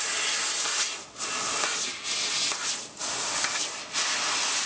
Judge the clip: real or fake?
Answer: real